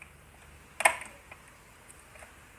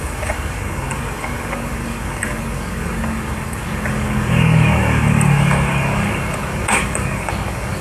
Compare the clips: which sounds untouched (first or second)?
first